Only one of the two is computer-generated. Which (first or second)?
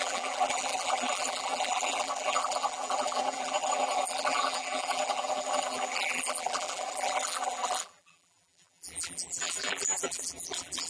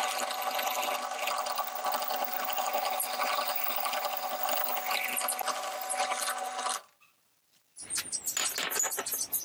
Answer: first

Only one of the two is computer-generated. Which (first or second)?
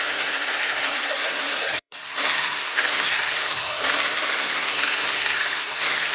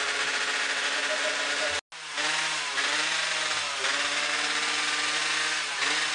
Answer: first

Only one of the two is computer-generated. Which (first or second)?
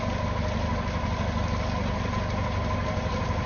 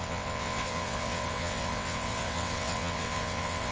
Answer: second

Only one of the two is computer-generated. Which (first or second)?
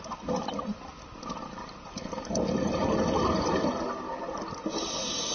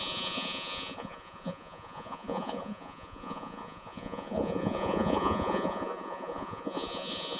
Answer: second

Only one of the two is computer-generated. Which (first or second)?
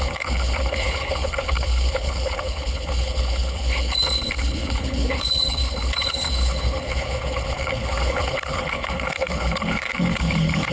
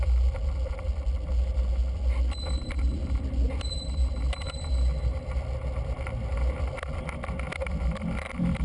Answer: first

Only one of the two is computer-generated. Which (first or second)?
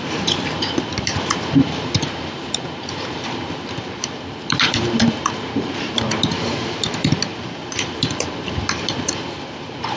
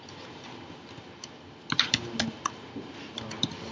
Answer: first